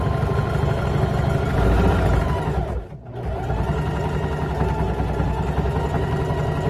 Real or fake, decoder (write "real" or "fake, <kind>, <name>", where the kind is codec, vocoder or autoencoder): real